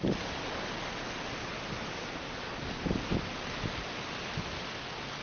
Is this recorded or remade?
recorded